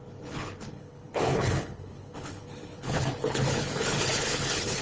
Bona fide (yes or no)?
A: no